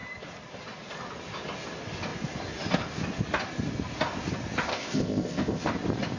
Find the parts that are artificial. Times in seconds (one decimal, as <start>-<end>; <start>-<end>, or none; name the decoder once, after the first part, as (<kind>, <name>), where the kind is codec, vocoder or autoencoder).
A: 4.7-5.6 (codec, ZipCodec)